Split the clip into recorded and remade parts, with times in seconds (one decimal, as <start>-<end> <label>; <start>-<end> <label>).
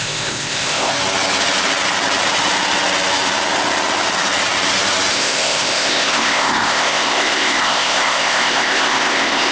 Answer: 0.0-0.9 remade; 0.9-5.1 recorded; 5.1-9.5 remade